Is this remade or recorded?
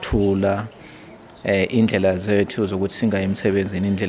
recorded